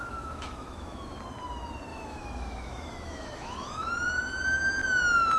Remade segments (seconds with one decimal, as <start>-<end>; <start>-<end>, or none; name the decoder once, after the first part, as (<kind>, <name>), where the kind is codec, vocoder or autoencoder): 0.0-1.2 (autoencoder, DAC-VAE); 1.9-3.9